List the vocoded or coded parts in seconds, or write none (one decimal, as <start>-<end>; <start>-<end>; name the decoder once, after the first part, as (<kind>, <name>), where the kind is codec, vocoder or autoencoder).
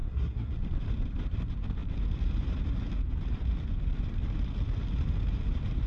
0.0-0.5 (codec, SNAC)